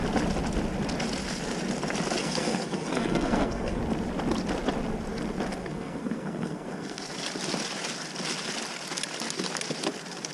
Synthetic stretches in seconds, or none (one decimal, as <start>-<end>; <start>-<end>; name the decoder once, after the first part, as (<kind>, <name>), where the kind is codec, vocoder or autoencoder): 2.2-3.8 (codec, SNAC); 5.6-7.0